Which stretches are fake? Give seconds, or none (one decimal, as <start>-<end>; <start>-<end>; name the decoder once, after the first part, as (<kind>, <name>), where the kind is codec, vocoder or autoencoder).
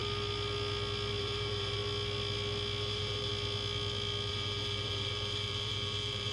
1.2-1.8 (vocoder, BigVGAN v2); 2.8-3.3; 4.3-6.3